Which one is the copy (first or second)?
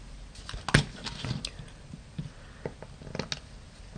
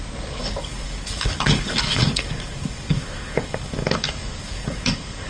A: second